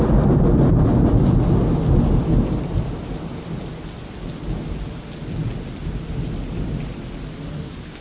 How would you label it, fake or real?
real